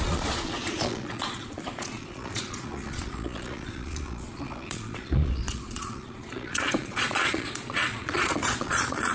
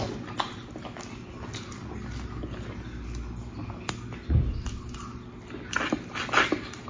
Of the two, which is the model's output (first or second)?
first